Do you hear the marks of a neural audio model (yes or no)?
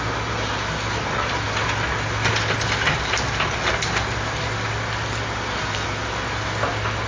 no